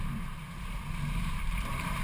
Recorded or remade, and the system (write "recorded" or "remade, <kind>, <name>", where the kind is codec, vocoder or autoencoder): remade, vocoder, BigVGAN v2